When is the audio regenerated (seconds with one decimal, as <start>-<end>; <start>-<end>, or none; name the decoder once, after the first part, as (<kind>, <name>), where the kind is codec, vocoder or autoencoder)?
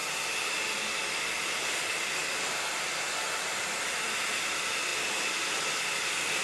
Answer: 0.7-4.9 (vocoder, BigVGAN v2); 5.8-6.4